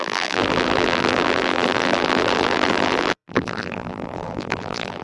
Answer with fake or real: fake